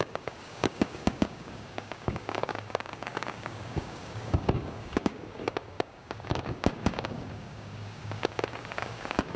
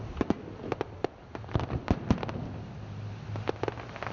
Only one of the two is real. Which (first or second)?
second